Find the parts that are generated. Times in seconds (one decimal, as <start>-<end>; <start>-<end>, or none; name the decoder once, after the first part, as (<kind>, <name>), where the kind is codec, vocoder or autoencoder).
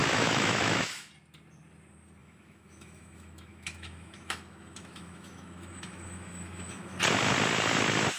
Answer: 0.0-1.1 (autoencoder, DAC-VAE); 2.2-7.0